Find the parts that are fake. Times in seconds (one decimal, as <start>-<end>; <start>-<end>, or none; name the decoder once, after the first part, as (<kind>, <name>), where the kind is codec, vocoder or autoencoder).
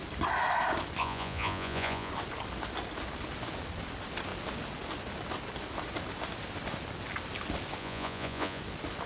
1.0-2.1 (vocoder, Vocos); 7.8-8.6